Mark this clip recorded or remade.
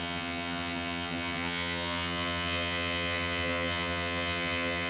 remade